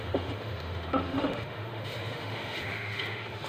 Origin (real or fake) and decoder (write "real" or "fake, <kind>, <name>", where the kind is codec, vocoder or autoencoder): fake, autoencoder, DAC-VAE